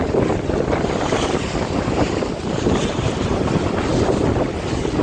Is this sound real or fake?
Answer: real